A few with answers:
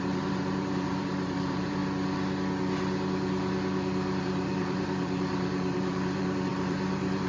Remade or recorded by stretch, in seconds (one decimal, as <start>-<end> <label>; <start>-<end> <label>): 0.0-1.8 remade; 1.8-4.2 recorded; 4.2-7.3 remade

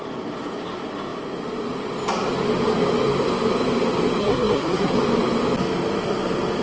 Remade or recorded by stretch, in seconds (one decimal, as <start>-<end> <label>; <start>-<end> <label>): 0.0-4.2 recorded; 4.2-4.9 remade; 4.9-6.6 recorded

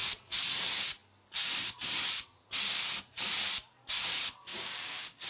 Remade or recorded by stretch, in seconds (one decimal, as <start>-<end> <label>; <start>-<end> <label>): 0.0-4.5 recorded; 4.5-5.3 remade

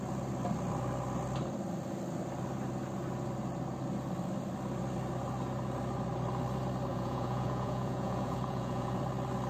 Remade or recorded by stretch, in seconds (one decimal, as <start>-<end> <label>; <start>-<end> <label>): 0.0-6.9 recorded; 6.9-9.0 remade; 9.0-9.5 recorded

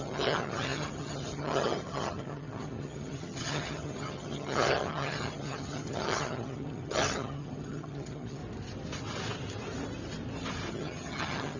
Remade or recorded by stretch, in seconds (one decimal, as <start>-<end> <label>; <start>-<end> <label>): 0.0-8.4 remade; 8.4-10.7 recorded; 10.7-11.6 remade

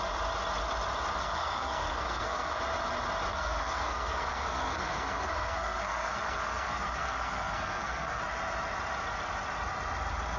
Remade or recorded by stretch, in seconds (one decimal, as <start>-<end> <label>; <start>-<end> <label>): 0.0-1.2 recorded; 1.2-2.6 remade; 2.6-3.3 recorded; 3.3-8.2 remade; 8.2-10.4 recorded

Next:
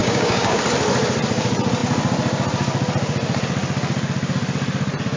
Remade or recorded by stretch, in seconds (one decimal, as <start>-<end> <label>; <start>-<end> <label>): 0.0-0.6 remade; 0.6-5.2 recorded